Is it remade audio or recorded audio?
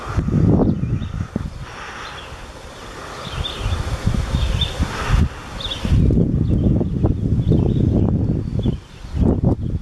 recorded